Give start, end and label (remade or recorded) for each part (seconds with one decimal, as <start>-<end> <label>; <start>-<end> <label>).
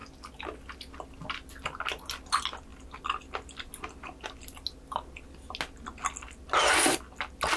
0.0-7.6 recorded